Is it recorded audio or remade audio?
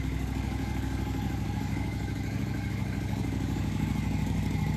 remade